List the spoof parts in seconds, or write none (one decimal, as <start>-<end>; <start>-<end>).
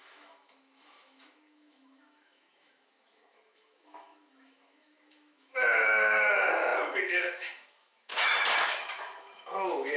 0.0-8.1; 8.6-10.0